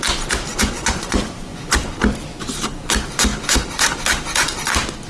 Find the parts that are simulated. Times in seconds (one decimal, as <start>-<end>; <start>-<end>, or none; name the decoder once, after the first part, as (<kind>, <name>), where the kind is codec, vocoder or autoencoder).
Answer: 0.5-1.6 (vocoder, Vocos)